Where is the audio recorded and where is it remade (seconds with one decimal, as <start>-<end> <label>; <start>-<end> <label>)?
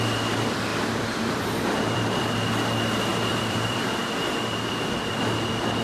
0.0-0.7 recorded; 0.7-2.3 remade; 2.3-3.1 recorded; 3.1-4.0 remade; 4.0-5.8 recorded